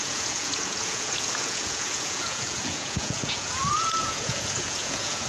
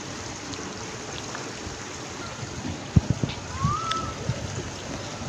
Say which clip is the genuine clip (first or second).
second